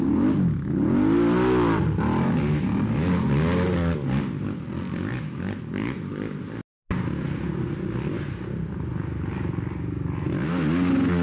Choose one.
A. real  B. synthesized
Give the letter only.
A